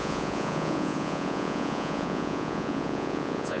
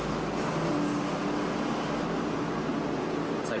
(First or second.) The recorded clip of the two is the second